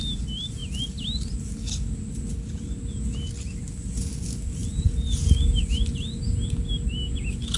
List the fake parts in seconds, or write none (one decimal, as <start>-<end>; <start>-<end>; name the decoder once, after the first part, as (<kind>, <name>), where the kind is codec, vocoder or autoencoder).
none